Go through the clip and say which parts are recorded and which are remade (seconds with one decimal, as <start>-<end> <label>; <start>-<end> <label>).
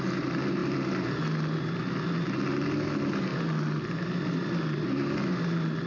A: 0.0-5.9 recorded